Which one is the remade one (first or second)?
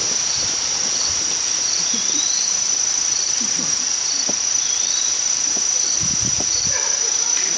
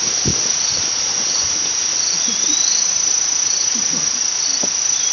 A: first